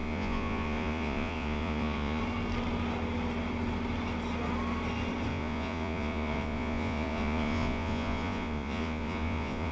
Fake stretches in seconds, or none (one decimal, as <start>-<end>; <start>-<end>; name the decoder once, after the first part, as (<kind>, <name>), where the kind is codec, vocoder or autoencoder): 0.0-2.2 (vocoder, Vocos); 5.3-9.7